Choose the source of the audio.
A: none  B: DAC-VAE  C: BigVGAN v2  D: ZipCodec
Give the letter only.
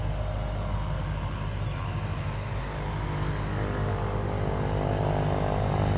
A